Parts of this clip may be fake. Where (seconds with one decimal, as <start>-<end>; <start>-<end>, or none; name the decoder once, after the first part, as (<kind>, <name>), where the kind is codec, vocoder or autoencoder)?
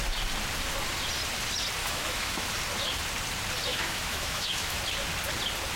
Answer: 1.8-2.5 (autoencoder, DAC-VAE); 3.7-4.8